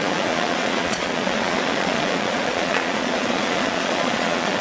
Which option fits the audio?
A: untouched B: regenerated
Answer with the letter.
B